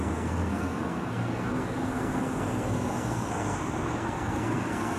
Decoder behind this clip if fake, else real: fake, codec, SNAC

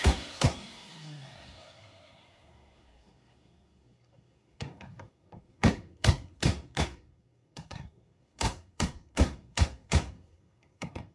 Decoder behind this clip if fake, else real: fake, codec, SNAC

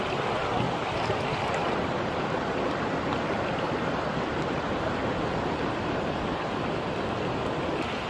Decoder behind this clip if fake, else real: real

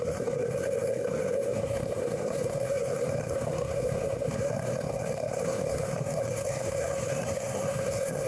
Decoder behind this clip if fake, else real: fake, codec, SNAC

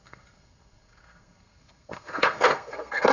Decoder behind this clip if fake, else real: fake, codec, SNAC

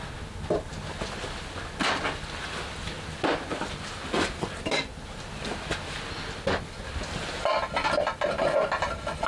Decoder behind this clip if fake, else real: real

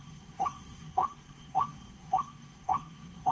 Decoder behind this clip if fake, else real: fake, codec, SNAC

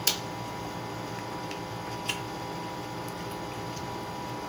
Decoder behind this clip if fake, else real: real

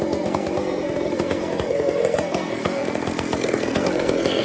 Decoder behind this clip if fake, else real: fake, codec, SNAC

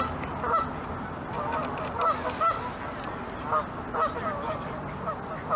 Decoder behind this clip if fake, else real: real